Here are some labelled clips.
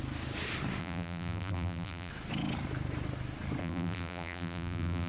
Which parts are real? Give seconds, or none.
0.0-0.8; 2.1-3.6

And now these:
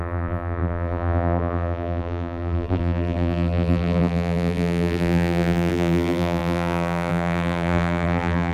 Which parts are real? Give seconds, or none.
none

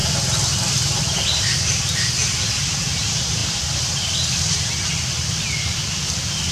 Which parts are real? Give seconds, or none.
0.0-1.0; 2.2-2.8